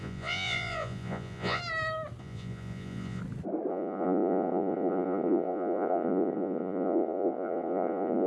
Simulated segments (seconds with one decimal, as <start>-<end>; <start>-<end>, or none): 0.0-1.6; 2.2-3.2; 3.7-8.3